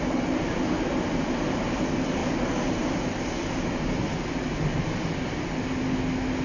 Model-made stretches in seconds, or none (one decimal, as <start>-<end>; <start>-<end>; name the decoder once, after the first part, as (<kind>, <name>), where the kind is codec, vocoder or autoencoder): none